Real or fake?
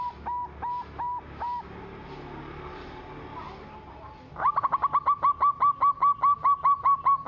real